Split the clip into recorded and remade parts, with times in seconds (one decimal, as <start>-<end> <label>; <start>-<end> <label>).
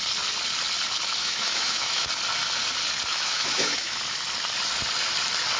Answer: 0.0-1.2 recorded; 1.2-2.1 remade; 2.1-3.1 recorded; 3.1-4.0 remade; 4.0-5.6 recorded